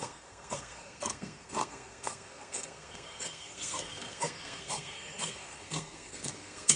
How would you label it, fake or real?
fake